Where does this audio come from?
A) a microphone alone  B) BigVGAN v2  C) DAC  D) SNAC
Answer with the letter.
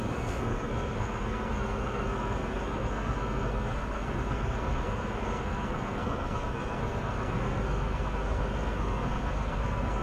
D